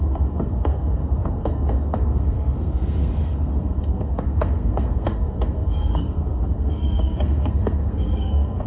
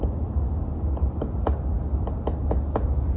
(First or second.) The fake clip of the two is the first